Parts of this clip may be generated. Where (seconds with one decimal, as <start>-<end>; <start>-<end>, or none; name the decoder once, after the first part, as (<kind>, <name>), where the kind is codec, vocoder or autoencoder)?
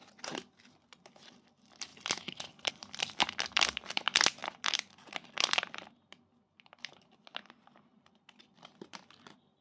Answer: 0.0-1.9 (vocoder, BigVGAN v2); 2.7-4.4; 7.5-9.6